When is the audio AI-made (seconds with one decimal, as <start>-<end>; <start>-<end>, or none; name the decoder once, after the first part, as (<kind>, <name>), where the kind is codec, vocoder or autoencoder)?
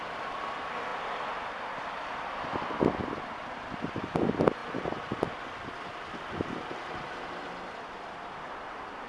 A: none